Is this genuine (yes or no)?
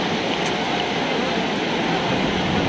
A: yes